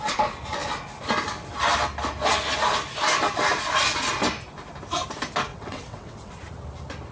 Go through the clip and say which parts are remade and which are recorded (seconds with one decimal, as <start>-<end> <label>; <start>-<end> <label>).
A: 0.0-5.5 recorded; 5.5-6.3 remade; 6.3-7.1 recorded